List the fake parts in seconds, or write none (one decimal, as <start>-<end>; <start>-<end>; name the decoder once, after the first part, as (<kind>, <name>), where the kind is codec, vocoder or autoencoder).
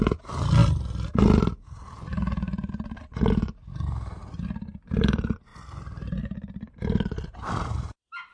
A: 2.1-2.7 (vocoder, BigVGAN v2)